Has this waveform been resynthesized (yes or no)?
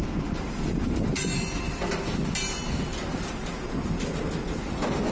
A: no